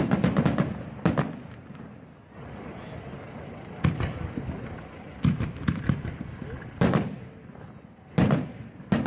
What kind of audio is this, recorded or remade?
recorded